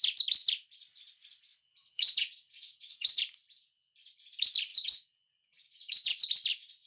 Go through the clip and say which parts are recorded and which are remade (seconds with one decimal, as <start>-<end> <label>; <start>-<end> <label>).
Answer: 0.0-1.8 recorded; 1.8-3.2 remade; 3.2-4.7 recorded; 4.7-6.3 remade; 6.3-6.9 recorded